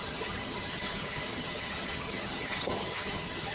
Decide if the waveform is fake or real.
fake